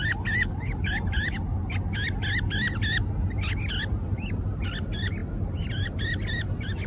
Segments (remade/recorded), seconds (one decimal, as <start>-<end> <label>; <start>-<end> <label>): 0.0-6.9 recorded